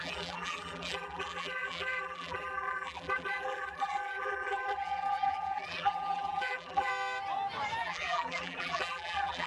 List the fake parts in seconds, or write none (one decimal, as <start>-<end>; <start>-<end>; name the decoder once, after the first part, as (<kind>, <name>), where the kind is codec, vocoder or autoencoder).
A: 0.0-6.9 (vocoder, BigVGAN v2); 7.8-9.5